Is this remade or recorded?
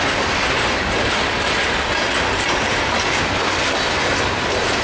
recorded